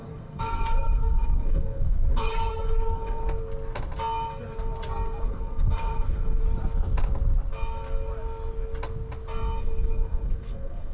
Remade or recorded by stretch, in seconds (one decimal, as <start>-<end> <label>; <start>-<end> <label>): 0.0-3.2 remade; 3.2-5.2 recorded; 5.2-6.4 remade; 6.4-9.6 recorded; 9.6-10.9 remade